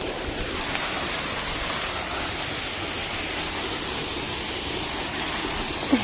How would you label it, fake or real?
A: real